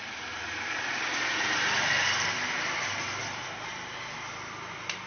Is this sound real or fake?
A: fake